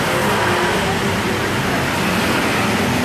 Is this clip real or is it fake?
real